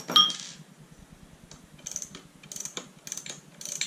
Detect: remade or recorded recorded